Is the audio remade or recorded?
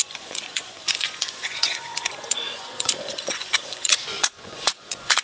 remade